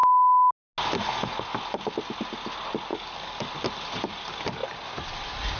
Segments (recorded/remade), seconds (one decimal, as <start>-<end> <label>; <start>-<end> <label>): 0.0-0.5 remade; 0.5-2.9 recorded; 2.9-3.5 remade; 3.5-5.6 recorded